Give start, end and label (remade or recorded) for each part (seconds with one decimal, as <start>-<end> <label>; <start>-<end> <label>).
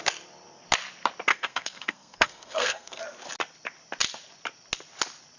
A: 0.0-1.3 recorded; 1.3-3.0 remade; 3.0-5.4 recorded